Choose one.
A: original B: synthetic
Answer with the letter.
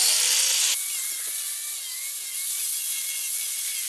A